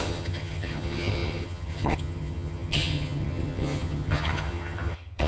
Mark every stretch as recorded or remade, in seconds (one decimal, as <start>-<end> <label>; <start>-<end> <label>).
0.0-5.3 remade